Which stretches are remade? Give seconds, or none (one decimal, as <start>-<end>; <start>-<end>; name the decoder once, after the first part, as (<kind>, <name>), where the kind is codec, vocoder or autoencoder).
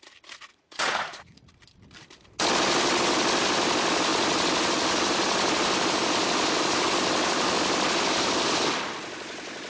0.5-1.5 (vocoder, Vocos)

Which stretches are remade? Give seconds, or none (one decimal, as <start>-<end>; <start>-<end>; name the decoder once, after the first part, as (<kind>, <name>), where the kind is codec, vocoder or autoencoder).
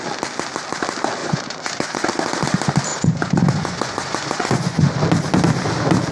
1.2-2.1 (vocoder, Vocos); 2.9-4.9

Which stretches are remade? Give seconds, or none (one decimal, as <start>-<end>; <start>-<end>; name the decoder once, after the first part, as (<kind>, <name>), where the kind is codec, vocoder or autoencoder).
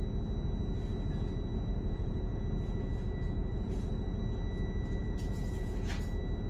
1.7-2.4 (vocoder, Vocos); 3.5-4.2; 5.0-5.9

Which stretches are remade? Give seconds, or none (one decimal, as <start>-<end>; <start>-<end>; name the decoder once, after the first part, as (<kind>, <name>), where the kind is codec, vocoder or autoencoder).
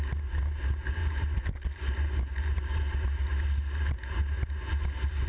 none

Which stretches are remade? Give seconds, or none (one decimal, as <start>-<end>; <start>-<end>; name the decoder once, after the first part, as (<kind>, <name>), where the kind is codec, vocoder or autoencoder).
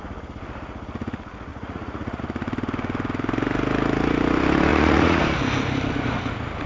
1.5-2.2 (vocoder, Vocos); 4.7-5.2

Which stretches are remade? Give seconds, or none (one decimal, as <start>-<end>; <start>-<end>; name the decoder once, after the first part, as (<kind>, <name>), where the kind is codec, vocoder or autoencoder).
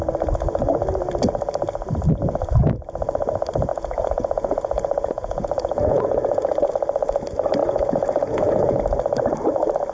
3.7-6.7 (vocoder, Vocos); 7.6-8.8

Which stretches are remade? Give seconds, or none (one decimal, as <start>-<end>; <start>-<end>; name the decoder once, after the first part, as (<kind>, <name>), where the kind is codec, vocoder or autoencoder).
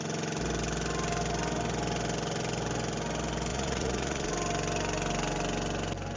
3.5-4.3 (vocoder, Vocos)